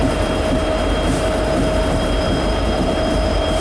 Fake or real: fake